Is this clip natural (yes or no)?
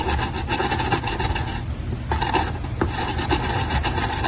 no